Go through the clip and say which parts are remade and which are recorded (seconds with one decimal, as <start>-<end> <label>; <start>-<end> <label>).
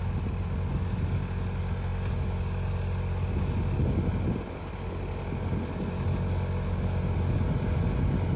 0.0-8.4 recorded